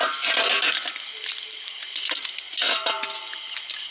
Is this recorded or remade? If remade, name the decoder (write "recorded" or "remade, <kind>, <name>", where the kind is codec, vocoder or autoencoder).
recorded